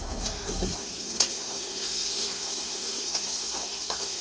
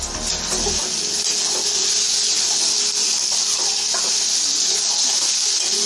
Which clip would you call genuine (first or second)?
second